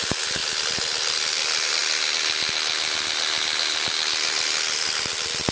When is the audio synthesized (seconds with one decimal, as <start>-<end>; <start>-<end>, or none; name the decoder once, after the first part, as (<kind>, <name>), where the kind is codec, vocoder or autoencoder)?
0.0-0.4 (vocoder, BigVGAN v2); 1.0-1.8; 5.1-5.5